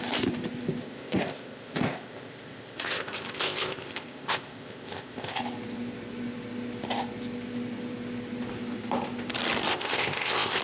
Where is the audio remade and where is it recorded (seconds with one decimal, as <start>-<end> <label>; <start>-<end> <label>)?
0.0-0.8 recorded; 0.8-5.4 remade; 5.4-9.7 recorded; 9.7-10.6 remade